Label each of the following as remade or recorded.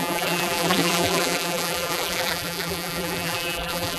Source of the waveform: remade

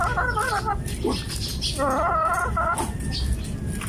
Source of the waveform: recorded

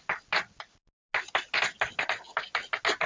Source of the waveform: recorded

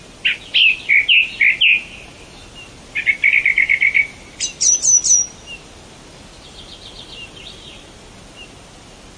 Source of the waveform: recorded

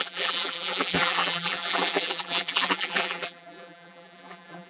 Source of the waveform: remade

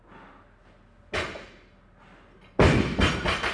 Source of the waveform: recorded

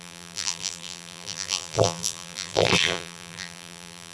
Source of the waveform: remade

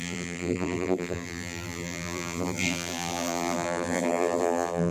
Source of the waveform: remade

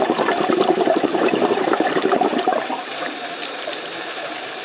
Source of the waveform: remade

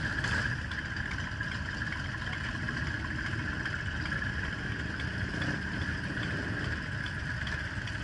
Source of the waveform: recorded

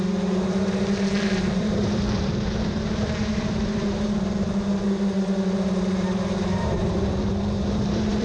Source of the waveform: remade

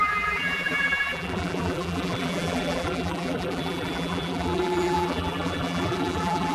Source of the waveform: remade